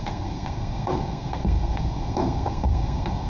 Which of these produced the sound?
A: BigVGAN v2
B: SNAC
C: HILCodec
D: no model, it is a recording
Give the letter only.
B